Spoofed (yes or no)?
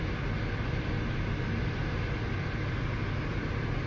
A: no